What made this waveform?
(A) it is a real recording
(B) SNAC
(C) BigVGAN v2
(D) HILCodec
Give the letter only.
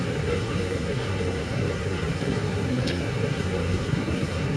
B